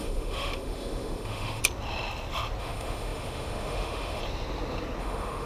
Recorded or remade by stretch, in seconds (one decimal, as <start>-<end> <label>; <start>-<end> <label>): 0.0-1.6 remade; 1.6-2.6 recorded; 2.6-4.2 remade; 4.2-5.0 recorded; 5.0-5.5 remade